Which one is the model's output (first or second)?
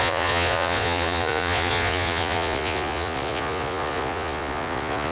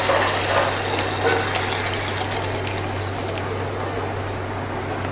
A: first